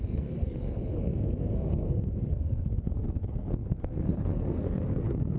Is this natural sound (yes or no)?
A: no